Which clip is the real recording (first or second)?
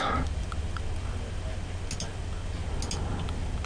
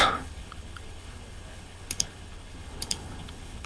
first